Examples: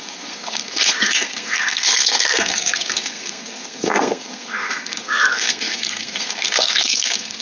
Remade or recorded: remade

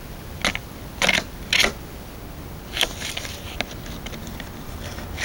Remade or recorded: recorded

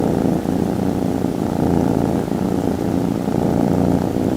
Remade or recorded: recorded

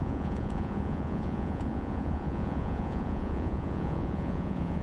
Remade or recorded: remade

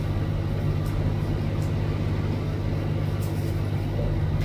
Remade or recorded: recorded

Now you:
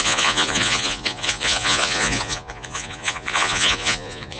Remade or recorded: remade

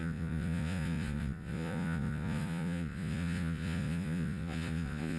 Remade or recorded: remade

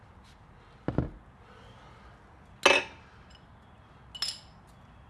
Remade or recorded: recorded